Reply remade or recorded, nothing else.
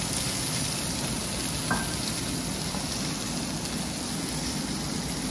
recorded